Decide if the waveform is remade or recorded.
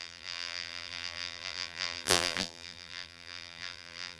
remade